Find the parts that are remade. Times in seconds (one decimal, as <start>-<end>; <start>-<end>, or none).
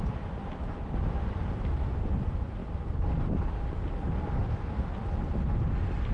none